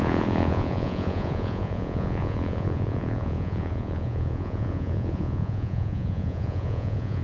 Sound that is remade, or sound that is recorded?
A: remade